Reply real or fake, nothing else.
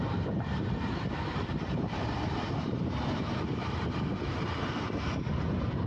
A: fake